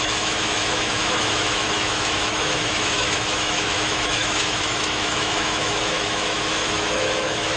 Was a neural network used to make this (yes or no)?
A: yes